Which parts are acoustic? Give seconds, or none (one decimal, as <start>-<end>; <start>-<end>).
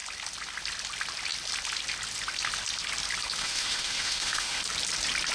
0.0-3.4; 4.6-5.3